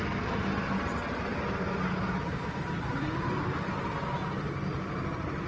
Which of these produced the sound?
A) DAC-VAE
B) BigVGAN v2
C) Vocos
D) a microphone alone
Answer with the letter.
D